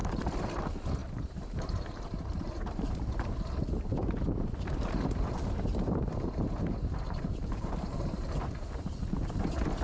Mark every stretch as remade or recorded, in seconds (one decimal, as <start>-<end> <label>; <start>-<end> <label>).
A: 0.0-0.6 remade; 0.6-1.0 recorded; 1.0-3.3 remade; 3.3-4.0 recorded; 4.0-8.9 remade; 8.9-9.8 recorded